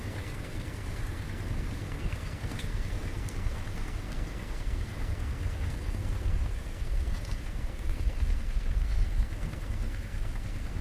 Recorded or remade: remade